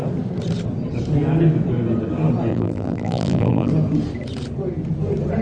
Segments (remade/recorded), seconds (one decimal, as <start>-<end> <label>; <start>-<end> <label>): 0.0-2.5 recorded; 2.5-3.7 remade; 3.7-5.4 recorded